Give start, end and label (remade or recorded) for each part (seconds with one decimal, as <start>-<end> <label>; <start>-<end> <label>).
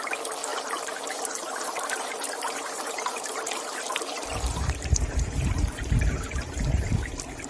0.0-0.5 recorded; 0.5-3.6 remade; 3.6-4.3 recorded; 4.3-6.8 remade; 6.8-7.5 recorded